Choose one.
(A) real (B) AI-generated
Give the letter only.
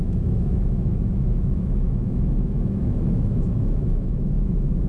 B